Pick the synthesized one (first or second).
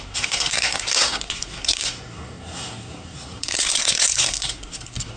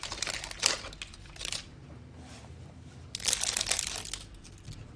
first